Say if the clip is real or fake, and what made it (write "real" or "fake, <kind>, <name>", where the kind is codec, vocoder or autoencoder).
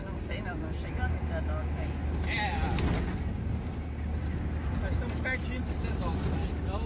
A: real